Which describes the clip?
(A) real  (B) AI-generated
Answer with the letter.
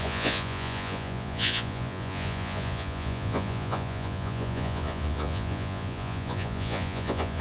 B